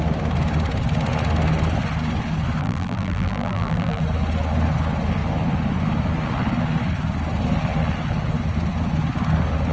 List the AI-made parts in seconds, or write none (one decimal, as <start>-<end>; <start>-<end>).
2.6-4.0

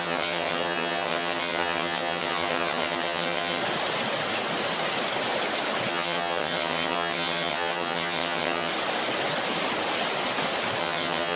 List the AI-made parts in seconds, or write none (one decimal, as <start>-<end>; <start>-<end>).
0.0-3.6; 5.9-8.7; 10.8-11.4